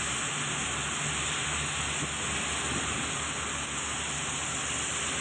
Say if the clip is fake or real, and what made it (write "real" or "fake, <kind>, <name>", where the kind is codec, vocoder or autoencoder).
real